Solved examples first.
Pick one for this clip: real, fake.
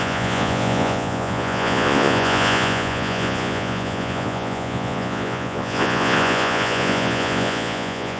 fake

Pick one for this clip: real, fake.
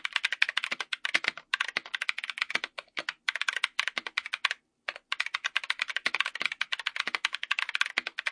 real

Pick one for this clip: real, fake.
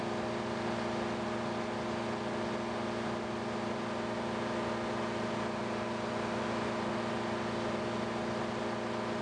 real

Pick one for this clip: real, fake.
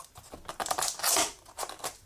real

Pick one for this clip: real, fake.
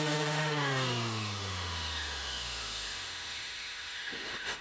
fake